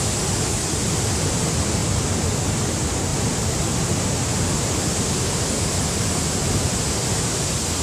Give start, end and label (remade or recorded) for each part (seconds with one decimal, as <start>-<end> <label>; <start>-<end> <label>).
0.0-7.8 recorded